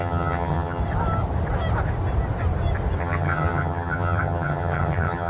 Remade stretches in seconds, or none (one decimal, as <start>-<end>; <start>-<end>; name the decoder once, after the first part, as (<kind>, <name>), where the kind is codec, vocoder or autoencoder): 0.0-0.8 (vocoder, HiFi-GAN); 3.0-5.3